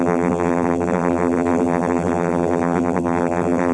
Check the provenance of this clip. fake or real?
fake